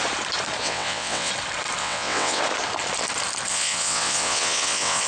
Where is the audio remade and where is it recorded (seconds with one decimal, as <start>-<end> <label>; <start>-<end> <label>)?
0.0-0.6 recorded; 0.6-1.3 remade; 1.3-1.8 recorded; 1.8-2.4 remade; 2.4-3.5 recorded; 3.5-5.1 remade